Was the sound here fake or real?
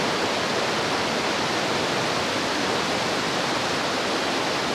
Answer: real